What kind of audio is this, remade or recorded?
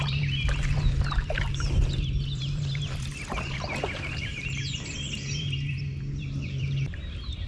remade